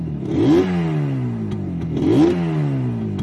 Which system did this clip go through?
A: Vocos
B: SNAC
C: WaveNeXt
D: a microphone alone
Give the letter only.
D